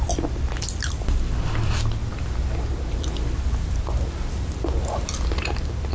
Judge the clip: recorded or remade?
recorded